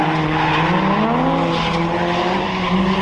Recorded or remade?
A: recorded